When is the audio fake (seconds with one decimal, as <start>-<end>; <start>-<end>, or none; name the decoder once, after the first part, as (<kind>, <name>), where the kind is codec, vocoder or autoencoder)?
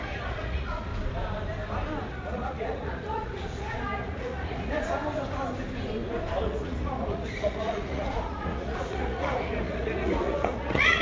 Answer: 0.0-0.9 (vocoder, Vocos); 2.1-5.0; 6.4-11.0